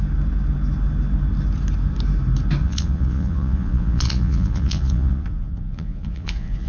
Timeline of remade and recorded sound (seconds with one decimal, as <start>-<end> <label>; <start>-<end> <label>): 0.0-2.6 recorded; 2.6-6.7 remade